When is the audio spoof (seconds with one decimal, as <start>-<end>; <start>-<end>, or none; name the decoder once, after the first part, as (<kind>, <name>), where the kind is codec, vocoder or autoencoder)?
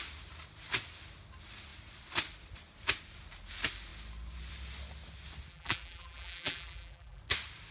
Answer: 5.5-7.2 (vocoder, BigVGAN v2)